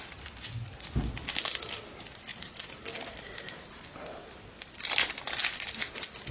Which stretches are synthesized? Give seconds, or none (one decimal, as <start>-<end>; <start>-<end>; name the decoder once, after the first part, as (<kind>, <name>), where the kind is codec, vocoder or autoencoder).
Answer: none